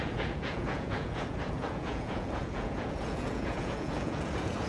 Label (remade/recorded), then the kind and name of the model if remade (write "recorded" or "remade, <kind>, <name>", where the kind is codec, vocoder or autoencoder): remade, vocoder, Vocos